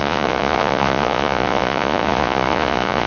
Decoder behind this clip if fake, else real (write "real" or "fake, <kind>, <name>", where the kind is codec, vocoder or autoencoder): fake, vocoder, Vocos